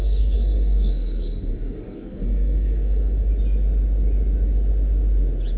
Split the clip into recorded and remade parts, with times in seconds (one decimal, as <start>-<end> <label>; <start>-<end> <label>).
0.0-3.3 remade; 3.3-5.6 recorded